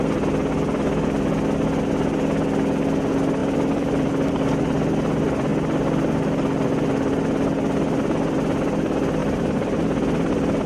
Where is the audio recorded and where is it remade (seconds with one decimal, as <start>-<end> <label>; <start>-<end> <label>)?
0.0-3.4 recorded; 3.4-4.1 remade; 4.1-9.2 recorded; 9.2-10.7 remade